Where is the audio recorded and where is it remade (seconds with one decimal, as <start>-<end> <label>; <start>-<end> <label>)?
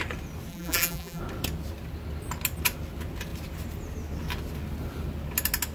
0.0-0.5 recorded; 0.5-1.2 remade; 1.2-5.7 recorded